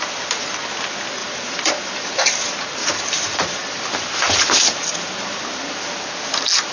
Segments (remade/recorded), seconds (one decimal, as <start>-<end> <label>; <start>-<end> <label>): 0.0-1.2 recorded; 1.2-2.4 remade; 2.4-2.8 recorded; 2.8-6.7 remade